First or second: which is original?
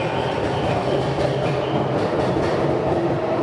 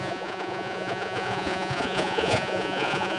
first